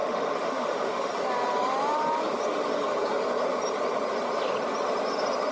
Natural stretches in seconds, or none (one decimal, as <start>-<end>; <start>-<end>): 1.1-5.5